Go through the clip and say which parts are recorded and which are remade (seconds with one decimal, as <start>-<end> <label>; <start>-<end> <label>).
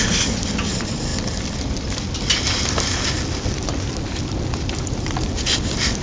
0.0-6.0 recorded